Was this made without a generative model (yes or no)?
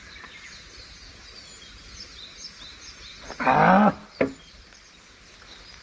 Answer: yes